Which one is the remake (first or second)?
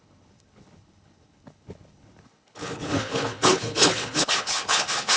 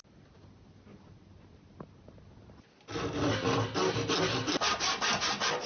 first